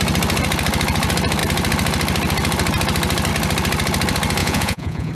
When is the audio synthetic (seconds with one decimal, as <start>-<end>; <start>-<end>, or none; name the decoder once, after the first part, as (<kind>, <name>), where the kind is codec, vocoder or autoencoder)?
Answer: 4.4-5.1 (vocoder, Vocos)